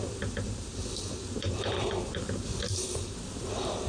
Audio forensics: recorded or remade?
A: remade